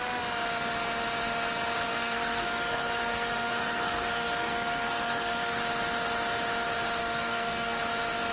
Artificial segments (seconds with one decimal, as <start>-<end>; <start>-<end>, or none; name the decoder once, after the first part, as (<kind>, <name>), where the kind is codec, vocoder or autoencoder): 1.9-5.6 (codec, SNAC); 7.0-7.8